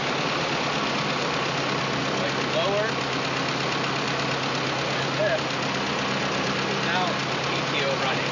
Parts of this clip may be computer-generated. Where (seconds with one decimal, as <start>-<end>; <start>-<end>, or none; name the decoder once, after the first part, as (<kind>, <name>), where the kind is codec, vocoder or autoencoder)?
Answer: none